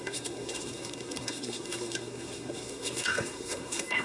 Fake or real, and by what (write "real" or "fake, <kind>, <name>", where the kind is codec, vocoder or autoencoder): fake, codec, SNAC